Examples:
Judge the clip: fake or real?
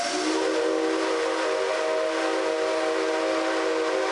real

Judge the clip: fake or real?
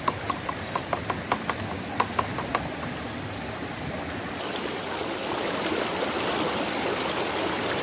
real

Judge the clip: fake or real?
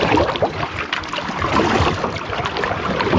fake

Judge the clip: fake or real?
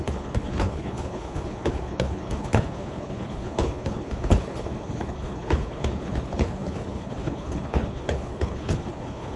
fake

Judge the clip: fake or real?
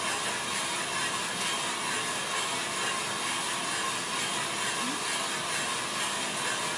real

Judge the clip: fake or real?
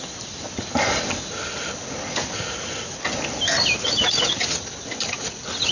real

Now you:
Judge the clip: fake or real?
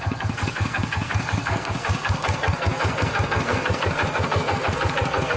fake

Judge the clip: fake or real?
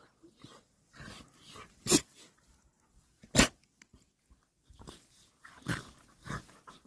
real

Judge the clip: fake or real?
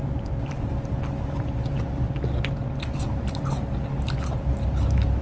real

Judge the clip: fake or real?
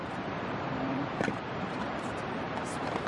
fake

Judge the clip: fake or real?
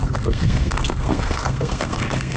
fake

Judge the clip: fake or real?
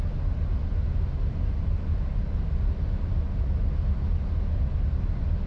real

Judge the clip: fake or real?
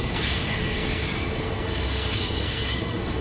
fake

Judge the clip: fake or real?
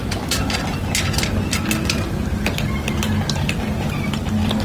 real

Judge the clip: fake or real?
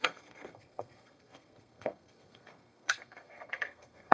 fake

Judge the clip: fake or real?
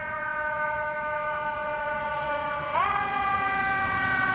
fake